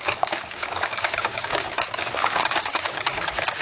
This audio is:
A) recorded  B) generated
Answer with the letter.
B